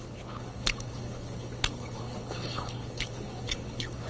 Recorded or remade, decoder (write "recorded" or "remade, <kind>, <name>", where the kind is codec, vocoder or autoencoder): remade, codec, HILCodec